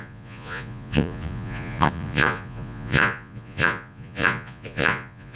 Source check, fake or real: fake